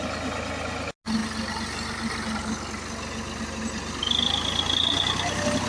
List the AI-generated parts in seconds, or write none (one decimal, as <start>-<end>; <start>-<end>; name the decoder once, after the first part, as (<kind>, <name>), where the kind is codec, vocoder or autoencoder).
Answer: none